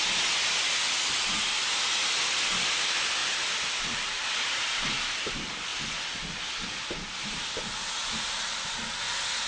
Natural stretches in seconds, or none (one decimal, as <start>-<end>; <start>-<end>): 0.0-3.2; 4.5-9.5